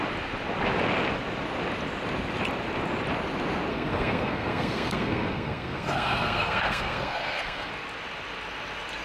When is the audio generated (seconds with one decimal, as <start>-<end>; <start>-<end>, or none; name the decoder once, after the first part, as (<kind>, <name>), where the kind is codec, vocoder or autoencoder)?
3.7-7.7 (codec, SNAC)